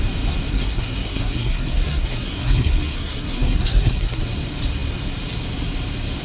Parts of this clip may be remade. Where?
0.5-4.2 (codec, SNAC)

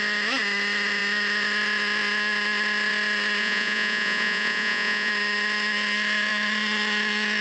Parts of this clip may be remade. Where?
3.4-5.1 (vocoder, Vocos)

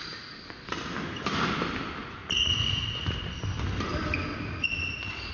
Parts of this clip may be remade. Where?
2.2-3.3 (vocoder, Vocos); 4.3-5.3

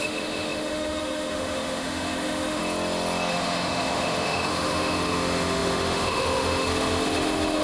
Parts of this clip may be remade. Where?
0.0-2.6 (autoencoder, DAC-VAE); 3.3-7.6

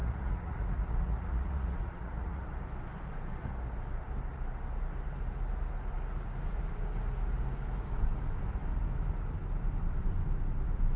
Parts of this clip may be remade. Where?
0.0-2.4 (vocoder, Vocos)

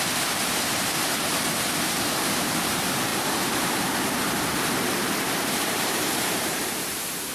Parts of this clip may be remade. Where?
0.0-4.2 (vocoder, BigVGAN v2); 4.9-7.3